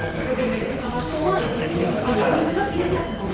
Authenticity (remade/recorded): remade